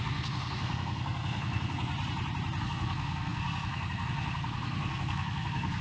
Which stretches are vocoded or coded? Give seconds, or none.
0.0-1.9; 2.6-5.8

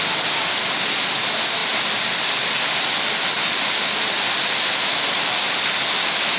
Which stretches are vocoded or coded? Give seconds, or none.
none

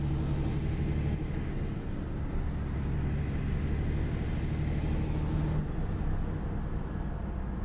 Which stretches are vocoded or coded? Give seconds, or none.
none

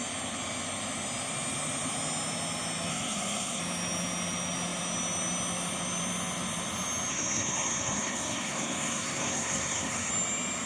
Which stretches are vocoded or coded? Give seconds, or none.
2.9-3.6; 7.1-10.1

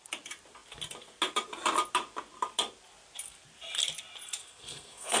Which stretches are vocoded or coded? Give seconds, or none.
4.4-5.2